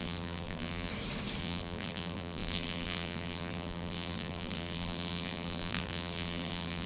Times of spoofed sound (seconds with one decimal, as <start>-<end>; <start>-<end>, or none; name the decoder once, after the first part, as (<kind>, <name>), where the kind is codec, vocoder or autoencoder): 0.0-0.9 (vocoder, BigVGAN v2); 1.4-6.9